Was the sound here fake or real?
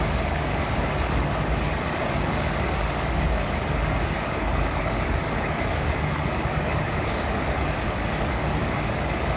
fake